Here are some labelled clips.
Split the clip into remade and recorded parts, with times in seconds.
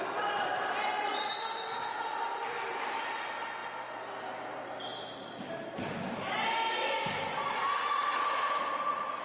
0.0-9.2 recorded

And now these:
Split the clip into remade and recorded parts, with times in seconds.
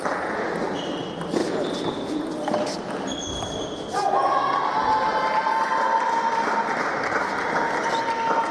0.0-8.5 recorded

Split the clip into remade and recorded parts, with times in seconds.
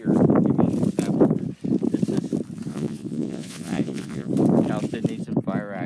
0.0-2.7 recorded; 2.7-4.3 remade; 4.3-5.9 recorded